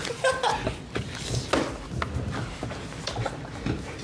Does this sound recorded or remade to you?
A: recorded